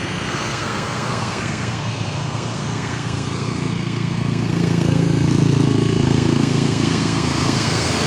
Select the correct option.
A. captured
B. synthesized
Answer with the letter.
B